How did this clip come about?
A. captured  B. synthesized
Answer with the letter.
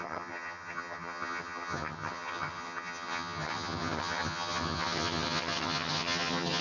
B